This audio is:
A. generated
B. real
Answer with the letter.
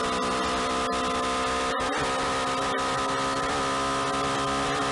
B